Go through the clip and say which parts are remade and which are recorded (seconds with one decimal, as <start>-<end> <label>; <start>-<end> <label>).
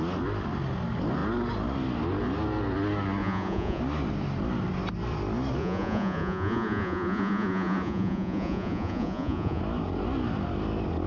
0.0-3.2 recorded; 3.2-3.8 remade; 3.8-5.6 recorded; 5.6-9.6 remade; 9.6-11.1 recorded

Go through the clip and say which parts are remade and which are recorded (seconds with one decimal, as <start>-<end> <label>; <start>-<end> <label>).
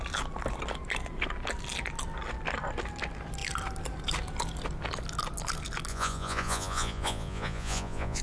0.0-5.9 recorded; 5.9-8.2 remade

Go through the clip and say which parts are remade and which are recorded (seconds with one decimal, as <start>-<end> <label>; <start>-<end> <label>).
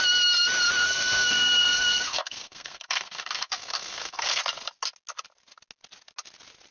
0.0-0.8 recorded; 0.8-4.4 remade; 4.4-6.7 recorded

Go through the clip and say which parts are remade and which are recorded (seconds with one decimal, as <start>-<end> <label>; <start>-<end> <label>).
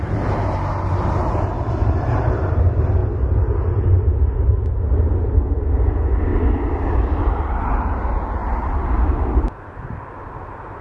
0.0-1.8 recorded; 1.8-2.6 remade; 2.6-6.3 recorded; 6.3-7.2 remade; 7.2-10.8 recorded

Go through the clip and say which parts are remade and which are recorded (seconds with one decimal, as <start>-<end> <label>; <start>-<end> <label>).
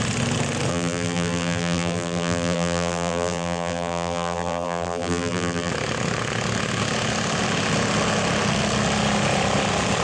0.0-0.7 recorded; 0.7-5.7 remade; 5.7-10.0 recorded